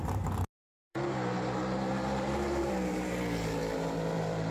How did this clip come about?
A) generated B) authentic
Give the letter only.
A